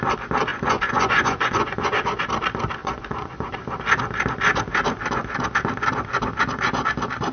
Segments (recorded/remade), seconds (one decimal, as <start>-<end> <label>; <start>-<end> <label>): 0.0-0.5 recorded; 0.5-2.2 remade; 2.2-2.8 recorded; 2.8-3.5 remade; 3.5-7.3 recorded